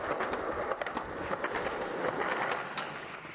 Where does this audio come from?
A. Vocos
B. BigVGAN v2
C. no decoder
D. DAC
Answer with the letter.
C